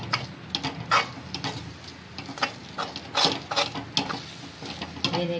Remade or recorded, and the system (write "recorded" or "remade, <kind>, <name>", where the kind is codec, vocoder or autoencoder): recorded